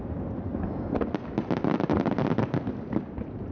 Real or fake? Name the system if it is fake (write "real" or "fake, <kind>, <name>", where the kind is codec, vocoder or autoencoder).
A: real